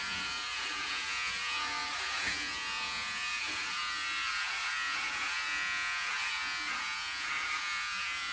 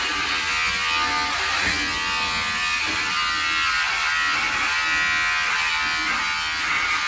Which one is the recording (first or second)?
second